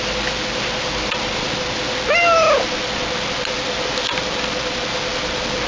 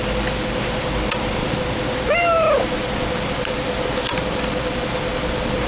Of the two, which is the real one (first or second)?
first